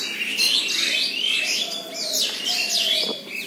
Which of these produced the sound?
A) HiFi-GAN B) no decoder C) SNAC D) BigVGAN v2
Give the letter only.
B